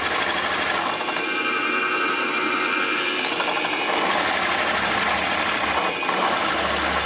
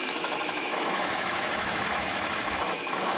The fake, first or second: second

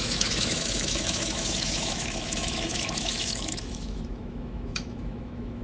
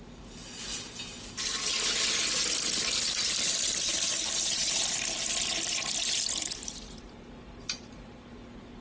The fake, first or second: first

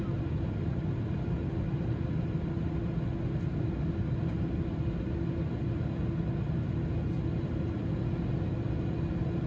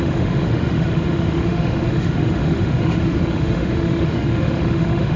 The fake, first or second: second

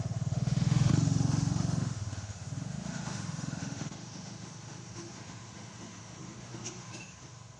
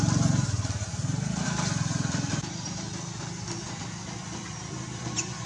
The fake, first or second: first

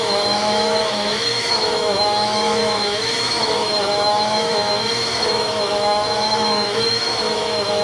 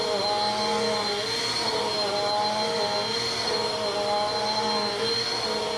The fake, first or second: first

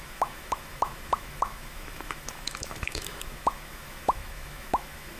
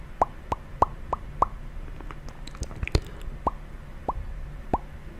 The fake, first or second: first